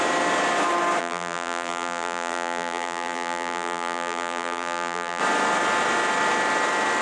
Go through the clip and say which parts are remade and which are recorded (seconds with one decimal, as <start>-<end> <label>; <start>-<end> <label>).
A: 0.0-1.0 recorded; 1.0-5.2 remade; 5.2-7.0 recorded